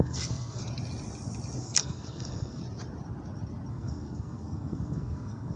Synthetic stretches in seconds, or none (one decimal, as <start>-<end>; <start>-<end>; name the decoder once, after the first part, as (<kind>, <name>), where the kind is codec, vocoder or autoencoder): 0.0-0.6 (codec, SNAC); 1.6-2.6; 3.7-5.6